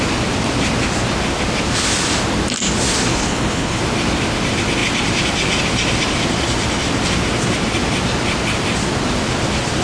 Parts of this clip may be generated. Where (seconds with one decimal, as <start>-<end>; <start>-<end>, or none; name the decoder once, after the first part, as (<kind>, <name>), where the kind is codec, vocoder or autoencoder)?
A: 3.1-3.8 (codec, HILCodec)